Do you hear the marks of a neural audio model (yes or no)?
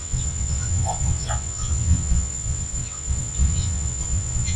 yes